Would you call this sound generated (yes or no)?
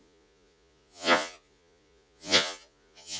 yes